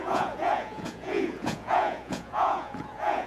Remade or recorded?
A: remade